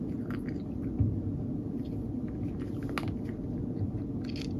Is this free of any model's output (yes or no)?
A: yes